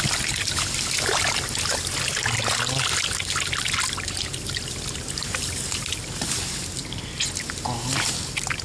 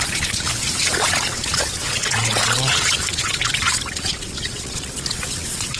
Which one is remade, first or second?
second